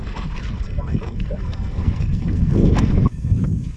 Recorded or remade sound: remade